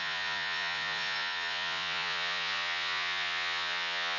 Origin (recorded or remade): remade